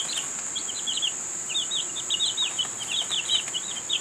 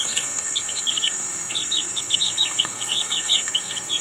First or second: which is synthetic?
second